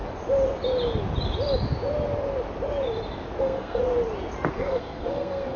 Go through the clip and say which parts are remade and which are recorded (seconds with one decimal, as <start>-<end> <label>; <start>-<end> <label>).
0.0-3.4 recorded; 3.4-3.8 remade; 3.8-4.5 recorded; 4.5-5.6 remade